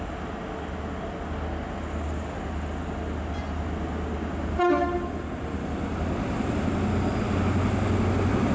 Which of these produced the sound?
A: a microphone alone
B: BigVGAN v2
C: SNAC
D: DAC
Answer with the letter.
A